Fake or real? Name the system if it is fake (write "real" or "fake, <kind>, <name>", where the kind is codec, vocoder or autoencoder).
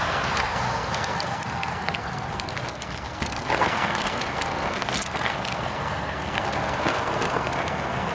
fake, codec, SNAC